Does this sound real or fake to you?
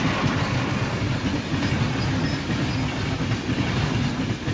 real